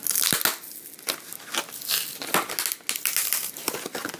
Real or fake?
real